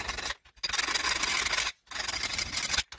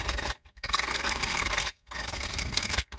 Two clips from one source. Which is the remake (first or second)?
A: second